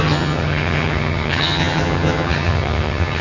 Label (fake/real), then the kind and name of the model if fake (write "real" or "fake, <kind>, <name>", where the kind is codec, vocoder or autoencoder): fake, vocoder, HiFi-GAN